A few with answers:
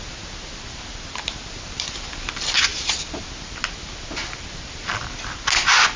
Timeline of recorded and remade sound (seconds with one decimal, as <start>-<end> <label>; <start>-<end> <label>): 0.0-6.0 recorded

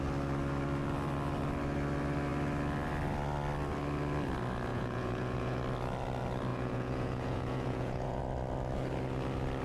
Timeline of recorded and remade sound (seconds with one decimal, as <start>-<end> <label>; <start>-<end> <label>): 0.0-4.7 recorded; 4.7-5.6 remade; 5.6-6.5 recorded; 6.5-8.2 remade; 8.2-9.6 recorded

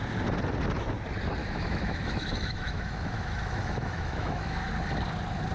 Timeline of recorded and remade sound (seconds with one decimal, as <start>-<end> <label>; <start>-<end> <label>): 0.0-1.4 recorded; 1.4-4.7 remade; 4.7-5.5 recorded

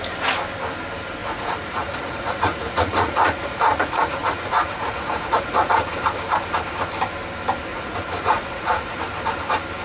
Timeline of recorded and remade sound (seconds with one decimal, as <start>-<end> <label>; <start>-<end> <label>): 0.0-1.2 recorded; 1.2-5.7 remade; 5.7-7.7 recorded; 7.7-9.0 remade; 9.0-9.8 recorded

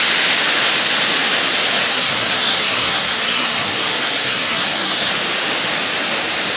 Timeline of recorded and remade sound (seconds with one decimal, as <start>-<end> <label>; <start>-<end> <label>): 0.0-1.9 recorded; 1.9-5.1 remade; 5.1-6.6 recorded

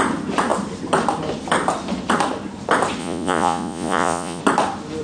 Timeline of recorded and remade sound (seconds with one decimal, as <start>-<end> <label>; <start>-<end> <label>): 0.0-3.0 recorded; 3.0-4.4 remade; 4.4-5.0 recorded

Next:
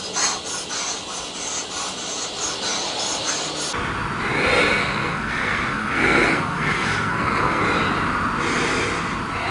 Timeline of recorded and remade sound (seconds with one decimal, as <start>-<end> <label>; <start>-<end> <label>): 0.0-4.8 recorded; 4.8-7.6 remade; 7.6-9.5 recorded

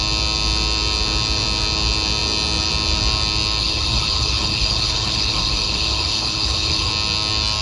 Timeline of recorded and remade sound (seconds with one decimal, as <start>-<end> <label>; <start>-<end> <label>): 0.0-3.6 recorded; 3.6-6.9 remade; 6.9-7.6 recorded